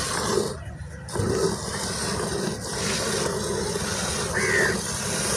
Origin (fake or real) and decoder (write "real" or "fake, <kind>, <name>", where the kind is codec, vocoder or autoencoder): real